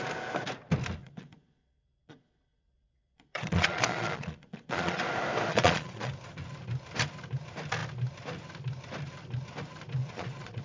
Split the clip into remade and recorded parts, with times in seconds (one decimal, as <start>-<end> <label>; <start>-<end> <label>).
0.0-1.0 recorded; 1.0-5.0 remade; 5.0-5.5 recorded; 5.5-6.1 remade; 6.1-10.0 recorded; 10.0-10.6 remade